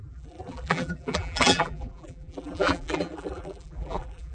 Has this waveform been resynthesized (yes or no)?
yes